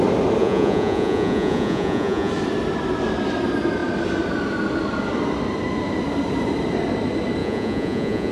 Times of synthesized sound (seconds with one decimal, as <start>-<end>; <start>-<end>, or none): 0.4-2.3; 7.4-8.3